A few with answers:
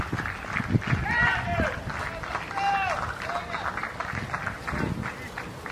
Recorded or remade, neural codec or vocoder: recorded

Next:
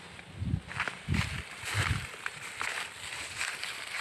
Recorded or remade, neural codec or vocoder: recorded